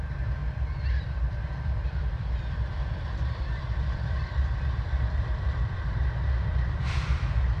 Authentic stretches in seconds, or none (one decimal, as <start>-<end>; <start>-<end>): none